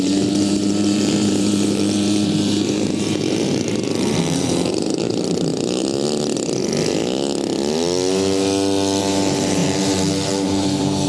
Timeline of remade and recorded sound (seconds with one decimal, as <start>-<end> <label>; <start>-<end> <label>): 0.0-5.5 remade; 5.5-9.0 recorded; 9.0-11.1 remade